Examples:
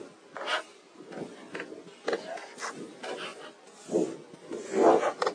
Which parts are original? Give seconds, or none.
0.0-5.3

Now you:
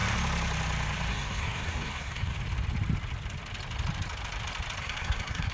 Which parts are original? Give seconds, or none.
0.0-1.1; 2.3-4.8

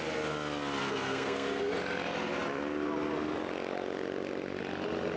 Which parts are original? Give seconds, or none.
0.0-0.8; 1.6-5.2

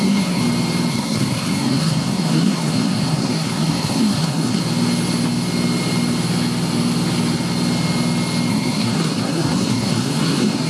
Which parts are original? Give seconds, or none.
0.4-0.9; 4.6-8.5

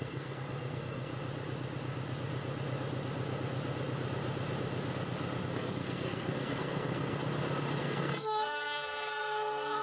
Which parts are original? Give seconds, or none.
1.1-5.5; 7.2-7.8